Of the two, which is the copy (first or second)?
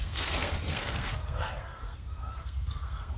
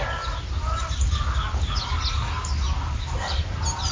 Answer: first